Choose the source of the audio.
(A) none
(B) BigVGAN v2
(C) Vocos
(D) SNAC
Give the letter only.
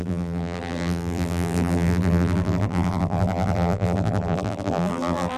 B